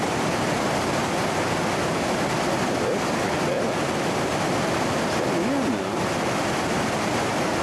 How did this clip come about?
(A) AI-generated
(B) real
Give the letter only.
B